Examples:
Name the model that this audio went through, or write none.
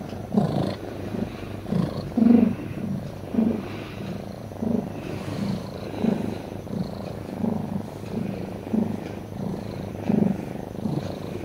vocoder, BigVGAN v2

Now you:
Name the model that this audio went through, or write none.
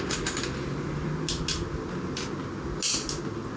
none